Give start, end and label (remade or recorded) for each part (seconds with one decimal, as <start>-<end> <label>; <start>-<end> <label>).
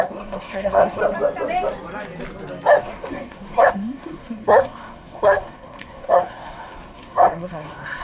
0.0-1.0 remade; 1.0-2.8 recorded; 2.8-8.0 remade